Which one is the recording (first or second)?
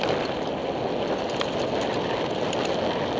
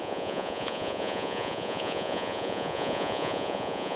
first